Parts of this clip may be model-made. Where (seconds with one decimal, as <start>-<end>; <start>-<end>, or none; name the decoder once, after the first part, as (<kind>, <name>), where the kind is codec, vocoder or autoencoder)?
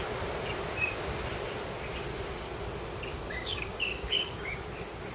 3.1-4.6 (codec, DAC)